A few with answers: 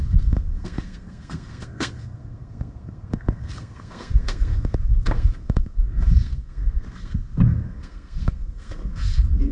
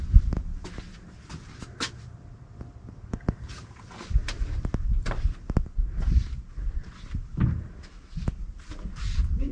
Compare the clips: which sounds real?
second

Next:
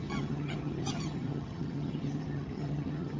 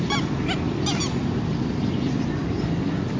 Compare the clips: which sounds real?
second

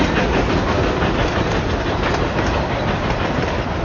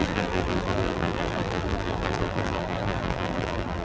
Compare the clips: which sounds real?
first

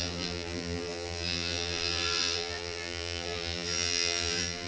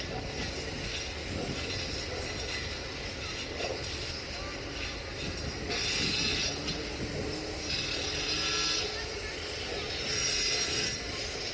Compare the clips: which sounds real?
second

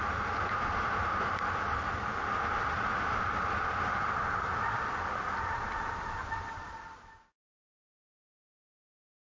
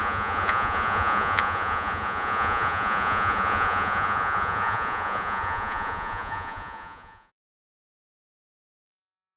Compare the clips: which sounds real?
first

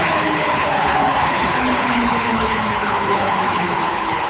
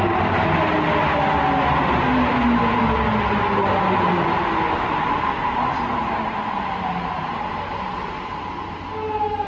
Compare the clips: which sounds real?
second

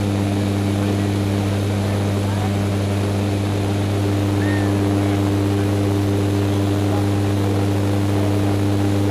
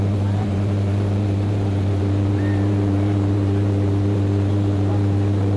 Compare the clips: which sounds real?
first